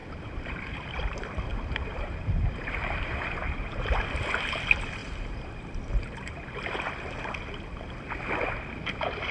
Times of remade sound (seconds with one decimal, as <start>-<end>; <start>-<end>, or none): 0.0-0.9; 1.5-4.0; 5.0-6.9